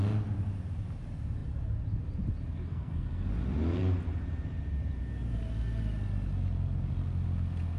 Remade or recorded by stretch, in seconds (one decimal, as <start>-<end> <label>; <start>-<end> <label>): 0.0-2.7 recorded; 2.7-3.3 remade; 3.3-7.8 recorded